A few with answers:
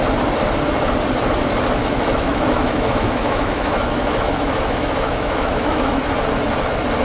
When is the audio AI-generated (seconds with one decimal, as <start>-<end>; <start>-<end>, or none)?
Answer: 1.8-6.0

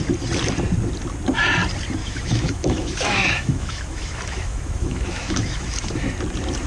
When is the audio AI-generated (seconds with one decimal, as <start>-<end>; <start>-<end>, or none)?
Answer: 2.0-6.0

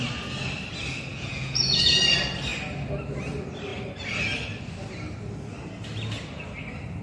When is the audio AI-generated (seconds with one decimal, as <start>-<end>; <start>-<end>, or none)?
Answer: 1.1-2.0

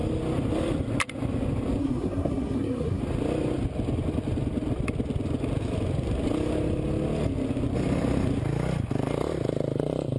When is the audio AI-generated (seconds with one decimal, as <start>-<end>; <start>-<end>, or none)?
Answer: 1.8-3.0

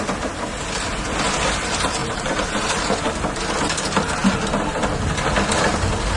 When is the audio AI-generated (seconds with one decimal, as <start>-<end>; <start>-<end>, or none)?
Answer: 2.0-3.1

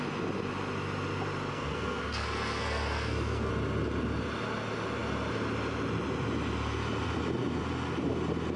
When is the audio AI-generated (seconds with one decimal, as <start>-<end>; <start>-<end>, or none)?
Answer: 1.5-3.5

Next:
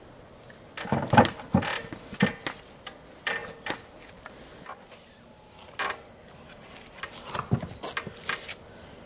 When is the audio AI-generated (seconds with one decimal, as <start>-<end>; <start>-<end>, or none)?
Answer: none